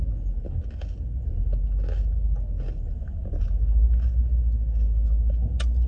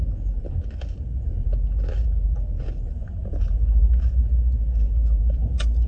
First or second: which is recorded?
first